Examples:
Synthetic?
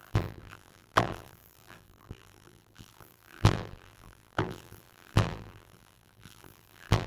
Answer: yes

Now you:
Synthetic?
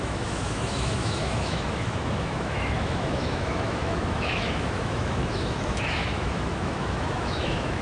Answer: yes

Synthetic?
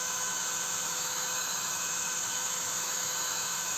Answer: yes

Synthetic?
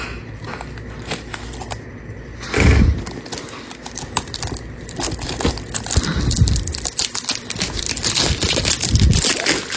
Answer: no